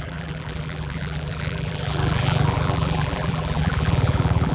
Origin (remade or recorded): remade